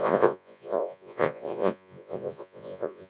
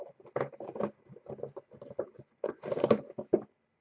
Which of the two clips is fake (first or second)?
first